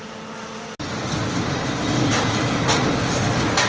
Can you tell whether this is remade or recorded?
recorded